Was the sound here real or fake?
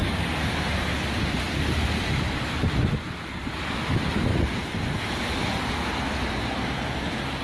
real